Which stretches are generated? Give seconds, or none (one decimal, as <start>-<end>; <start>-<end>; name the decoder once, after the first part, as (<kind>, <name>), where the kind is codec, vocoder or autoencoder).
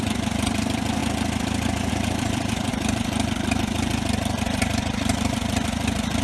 0.0-1.0 (vocoder, BigVGAN v2); 1.9-6.2